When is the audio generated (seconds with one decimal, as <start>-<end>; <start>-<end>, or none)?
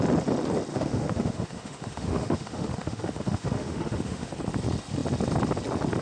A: 0.7-4.3